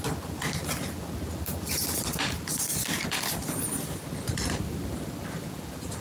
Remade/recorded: remade